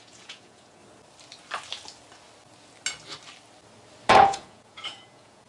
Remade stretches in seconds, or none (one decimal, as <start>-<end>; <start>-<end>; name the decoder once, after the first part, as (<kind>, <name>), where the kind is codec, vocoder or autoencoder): 0.0-0.8 (vocoder, Vocos); 4.1-5.5